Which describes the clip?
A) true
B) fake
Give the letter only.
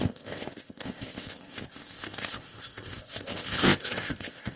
B